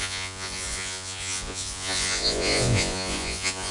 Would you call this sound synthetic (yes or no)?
yes